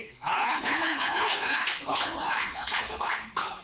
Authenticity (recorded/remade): remade